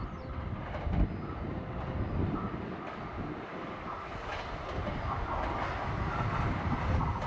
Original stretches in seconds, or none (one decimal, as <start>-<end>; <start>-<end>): 0.0-4.3; 5.0-7.3